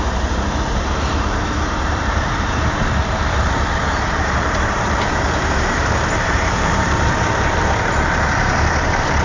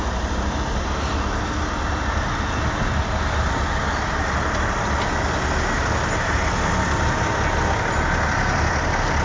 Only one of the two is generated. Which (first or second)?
first